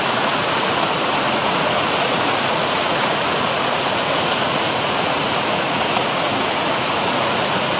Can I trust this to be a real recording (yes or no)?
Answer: no